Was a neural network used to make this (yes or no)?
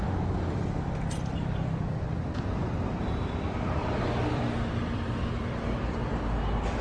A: yes